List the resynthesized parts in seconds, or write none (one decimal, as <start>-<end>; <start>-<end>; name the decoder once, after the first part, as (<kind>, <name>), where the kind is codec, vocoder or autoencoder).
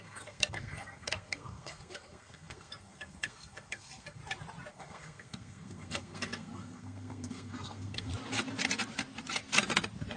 0.0-4.2 (codec, SNAC); 4.7-8.1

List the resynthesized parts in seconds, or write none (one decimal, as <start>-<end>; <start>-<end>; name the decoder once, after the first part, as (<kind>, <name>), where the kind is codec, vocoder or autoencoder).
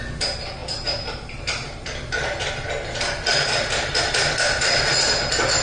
0.6-2.5 (vocoder, BigVGAN v2); 3.3-3.9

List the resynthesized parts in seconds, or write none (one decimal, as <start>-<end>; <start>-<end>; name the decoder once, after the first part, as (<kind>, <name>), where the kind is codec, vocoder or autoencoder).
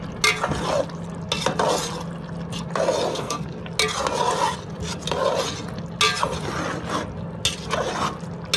3.1-3.6 (codec, SNAC)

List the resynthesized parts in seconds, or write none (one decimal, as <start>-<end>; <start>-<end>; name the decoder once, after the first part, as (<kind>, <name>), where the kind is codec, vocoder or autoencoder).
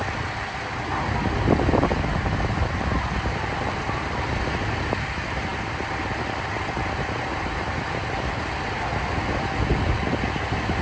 none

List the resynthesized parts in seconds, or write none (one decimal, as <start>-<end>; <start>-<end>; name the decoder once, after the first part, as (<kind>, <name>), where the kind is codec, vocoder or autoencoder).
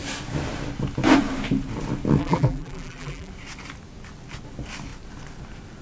2.2-3.3 (vocoder, BigVGAN v2)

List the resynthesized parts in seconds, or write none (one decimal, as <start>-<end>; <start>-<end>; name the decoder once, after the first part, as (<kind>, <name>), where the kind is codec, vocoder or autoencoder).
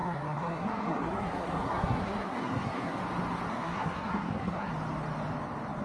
0.0-3.0 (codec, SNAC); 3.5-4.7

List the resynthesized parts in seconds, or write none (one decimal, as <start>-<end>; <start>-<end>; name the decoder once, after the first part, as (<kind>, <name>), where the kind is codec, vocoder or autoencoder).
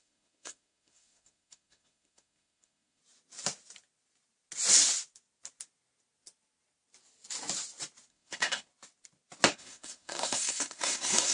0.0-3.0 (codec, SNAC); 8.1-8.7; 9.5-11.3